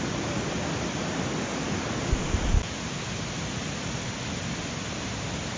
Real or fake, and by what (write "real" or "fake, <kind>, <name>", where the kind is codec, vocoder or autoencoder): real